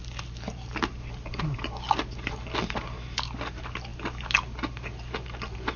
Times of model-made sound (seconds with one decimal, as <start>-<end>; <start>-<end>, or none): none